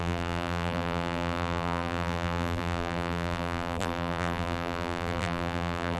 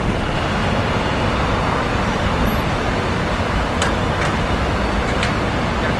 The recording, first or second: second